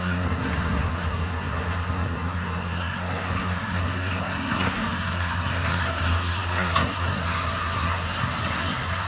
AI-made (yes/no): yes